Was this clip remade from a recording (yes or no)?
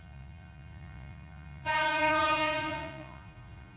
yes